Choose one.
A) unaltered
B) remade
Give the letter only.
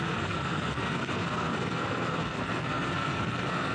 B